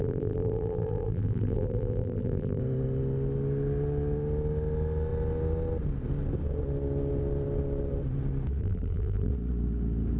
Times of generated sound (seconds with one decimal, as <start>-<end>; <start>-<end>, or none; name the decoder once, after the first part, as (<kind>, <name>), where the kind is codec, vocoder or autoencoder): 0.0-2.6 (vocoder, BigVGAN v2); 8.6-9.3